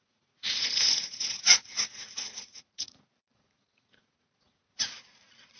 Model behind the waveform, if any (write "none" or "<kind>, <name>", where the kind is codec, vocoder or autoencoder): vocoder, Vocos